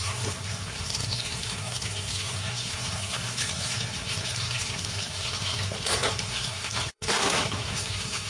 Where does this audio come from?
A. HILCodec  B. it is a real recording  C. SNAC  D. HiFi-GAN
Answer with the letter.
C